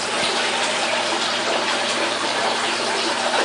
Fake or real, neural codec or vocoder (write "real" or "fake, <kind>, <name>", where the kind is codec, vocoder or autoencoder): fake, vocoder, BigVGAN v2